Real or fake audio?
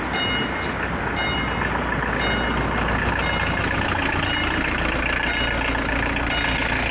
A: real